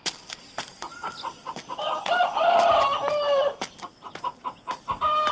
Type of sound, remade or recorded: recorded